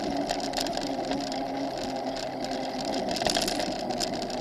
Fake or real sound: real